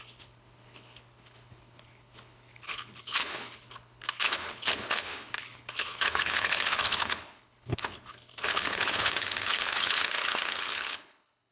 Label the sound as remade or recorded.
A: remade